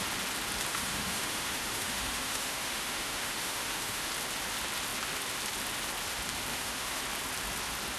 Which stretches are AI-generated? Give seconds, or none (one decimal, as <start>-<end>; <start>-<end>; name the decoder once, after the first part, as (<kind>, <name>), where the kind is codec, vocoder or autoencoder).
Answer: 0.7-4.1 (autoencoder, DAC-VAE); 6.5-7.0